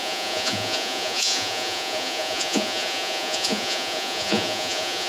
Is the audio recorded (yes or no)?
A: no